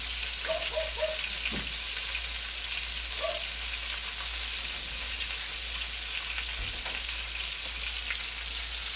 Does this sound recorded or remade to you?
recorded